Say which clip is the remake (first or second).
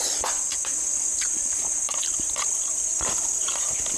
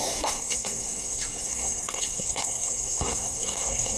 second